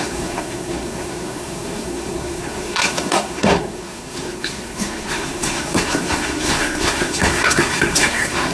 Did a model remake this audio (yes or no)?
yes